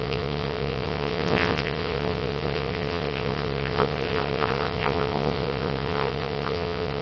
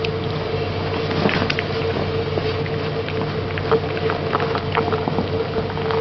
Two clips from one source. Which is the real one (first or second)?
second